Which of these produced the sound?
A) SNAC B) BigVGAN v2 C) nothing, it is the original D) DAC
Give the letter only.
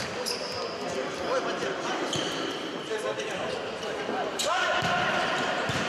B